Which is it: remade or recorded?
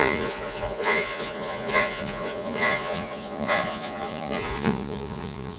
remade